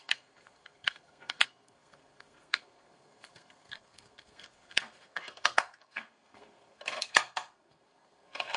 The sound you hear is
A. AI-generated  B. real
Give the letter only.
A